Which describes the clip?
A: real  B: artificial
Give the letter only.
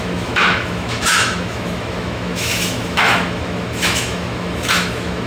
B